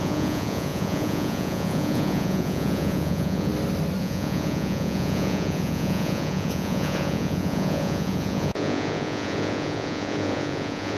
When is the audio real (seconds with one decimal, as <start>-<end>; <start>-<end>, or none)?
3.5-4.0